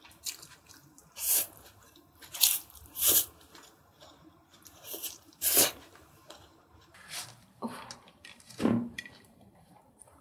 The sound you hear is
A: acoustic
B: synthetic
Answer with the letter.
B